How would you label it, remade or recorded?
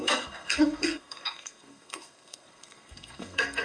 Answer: remade